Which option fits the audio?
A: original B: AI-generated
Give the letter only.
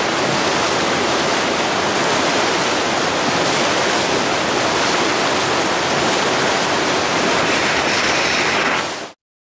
A